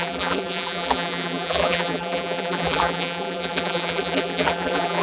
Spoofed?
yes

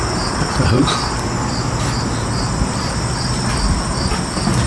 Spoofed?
no